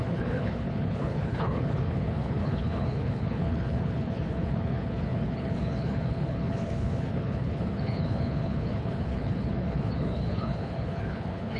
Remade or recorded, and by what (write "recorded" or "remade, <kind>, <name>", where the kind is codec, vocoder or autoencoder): remade, codec, HILCodec